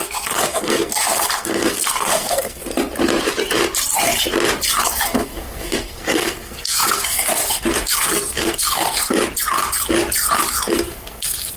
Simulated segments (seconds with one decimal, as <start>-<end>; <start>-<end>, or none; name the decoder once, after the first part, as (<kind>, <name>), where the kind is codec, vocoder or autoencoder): 0.0-2.6 (codec, SNAC); 4.8-9.1; 10.7-11.6